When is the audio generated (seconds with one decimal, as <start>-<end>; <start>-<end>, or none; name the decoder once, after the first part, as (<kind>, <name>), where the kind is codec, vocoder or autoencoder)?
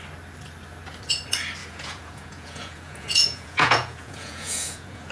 1.6-5.1 (vocoder, Vocos)